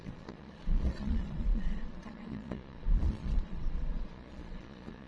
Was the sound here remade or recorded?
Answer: remade